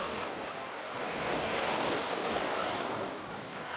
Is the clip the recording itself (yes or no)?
no